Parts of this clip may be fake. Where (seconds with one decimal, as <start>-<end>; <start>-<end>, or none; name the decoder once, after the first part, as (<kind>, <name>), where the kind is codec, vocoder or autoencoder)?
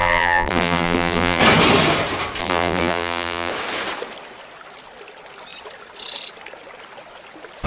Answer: 0.0-1.4 (vocoder, BigVGAN v2); 2.4-3.5